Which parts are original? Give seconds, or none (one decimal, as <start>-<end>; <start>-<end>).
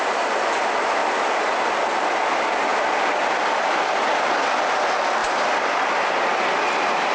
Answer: 0.0-7.1